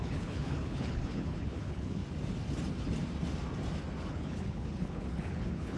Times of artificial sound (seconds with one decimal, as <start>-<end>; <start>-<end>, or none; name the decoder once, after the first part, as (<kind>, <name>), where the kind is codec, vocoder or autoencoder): 0.0-2.0 (codec, HILCodec); 4.1-5.8